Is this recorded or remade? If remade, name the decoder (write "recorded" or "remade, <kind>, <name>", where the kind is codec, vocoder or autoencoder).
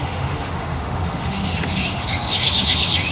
remade, autoencoder, DAC-VAE